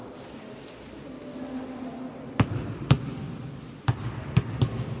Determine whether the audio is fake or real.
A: real